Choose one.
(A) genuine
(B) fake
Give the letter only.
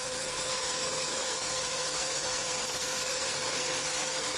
B